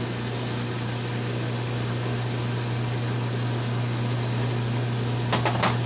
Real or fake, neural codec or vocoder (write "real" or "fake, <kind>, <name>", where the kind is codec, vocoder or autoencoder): real